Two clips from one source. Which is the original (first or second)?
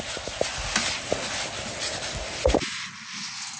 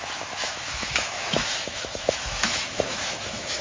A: first